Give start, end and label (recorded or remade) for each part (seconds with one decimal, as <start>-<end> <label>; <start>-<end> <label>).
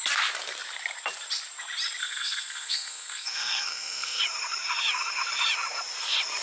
0.0-2.0 recorded; 2.0-4.2 remade; 4.2-6.4 recorded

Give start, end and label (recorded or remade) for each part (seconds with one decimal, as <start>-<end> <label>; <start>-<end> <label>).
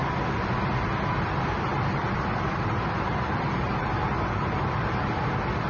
0.0-1.7 recorded; 1.7-5.1 remade; 5.1-5.7 recorded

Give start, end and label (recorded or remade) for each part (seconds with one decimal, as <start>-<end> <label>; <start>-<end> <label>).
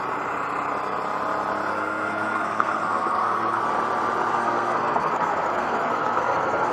0.0-1.7 recorded; 1.7-3.6 remade; 3.6-4.3 recorded; 4.3-6.7 remade